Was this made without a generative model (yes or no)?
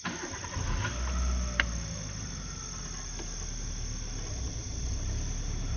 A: yes